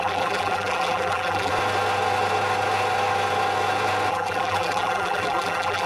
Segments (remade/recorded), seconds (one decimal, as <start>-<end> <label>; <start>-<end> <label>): 0.0-1.5 remade; 1.5-4.1 recorded; 4.1-5.9 remade